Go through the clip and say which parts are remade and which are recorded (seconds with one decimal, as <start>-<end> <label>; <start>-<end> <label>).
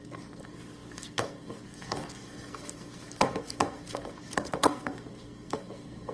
0.0-6.1 remade